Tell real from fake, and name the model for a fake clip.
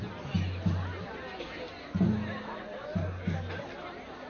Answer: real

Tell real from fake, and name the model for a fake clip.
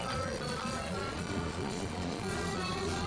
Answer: fake, vocoder, Vocos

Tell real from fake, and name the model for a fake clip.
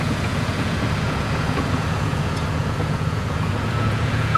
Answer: fake, vocoder, Vocos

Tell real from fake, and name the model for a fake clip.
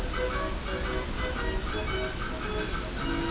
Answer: real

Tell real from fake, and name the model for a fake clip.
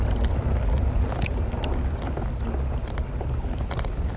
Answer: real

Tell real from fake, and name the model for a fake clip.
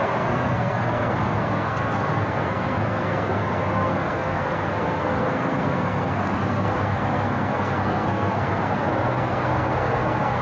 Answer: fake, codec, SNAC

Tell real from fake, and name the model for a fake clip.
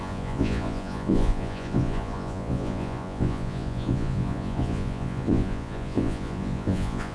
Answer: fake, vocoder, Vocos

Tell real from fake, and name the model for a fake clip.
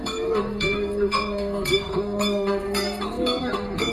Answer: fake, codec, SNAC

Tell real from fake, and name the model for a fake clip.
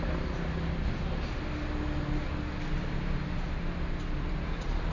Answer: real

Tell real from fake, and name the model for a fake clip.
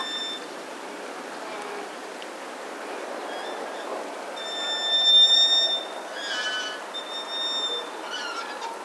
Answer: real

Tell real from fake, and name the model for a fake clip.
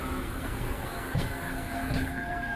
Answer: fake, codec, SNAC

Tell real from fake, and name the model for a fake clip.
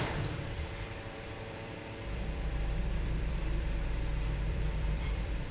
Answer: fake, vocoder, BigVGAN v2